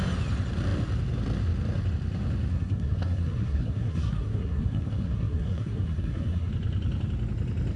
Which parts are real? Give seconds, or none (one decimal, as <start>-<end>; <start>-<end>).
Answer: 0.0-2.5; 6.5-7.8